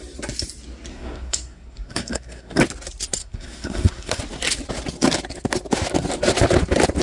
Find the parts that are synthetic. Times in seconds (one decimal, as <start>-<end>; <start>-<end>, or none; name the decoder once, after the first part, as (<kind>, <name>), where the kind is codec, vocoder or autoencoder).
0.9-2.6 (codec, SNAC); 3.2-4.2